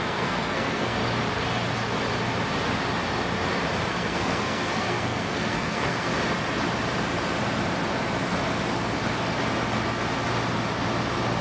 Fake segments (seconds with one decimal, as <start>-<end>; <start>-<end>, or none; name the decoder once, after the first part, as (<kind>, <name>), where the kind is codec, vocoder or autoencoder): 0.0-1.0 (codec, SNAC); 3.9-6.1